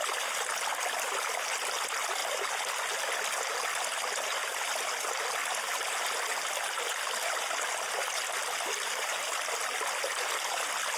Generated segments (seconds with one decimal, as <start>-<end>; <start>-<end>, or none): none